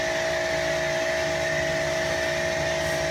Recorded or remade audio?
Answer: recorded